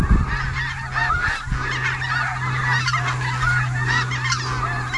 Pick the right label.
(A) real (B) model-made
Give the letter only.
A